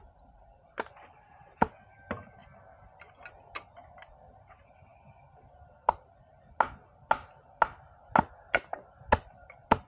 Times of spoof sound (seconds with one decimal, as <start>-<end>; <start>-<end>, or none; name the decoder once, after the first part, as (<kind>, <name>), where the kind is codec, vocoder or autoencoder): none